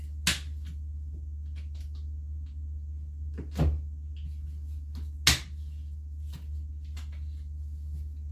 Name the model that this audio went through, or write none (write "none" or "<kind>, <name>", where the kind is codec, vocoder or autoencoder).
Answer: none